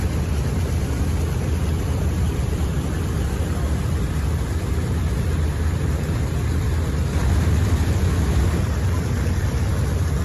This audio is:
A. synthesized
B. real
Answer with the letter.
A